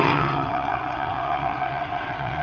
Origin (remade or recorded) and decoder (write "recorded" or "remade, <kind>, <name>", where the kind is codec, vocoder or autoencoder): remade, vocoder, WaveNeXt